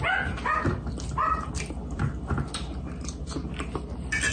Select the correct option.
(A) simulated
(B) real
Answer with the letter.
B